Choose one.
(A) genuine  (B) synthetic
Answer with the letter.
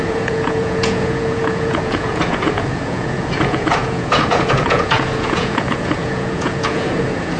B